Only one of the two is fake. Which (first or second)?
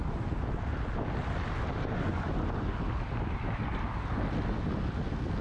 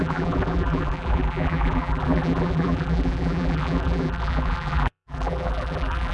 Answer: second